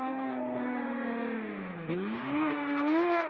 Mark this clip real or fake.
fake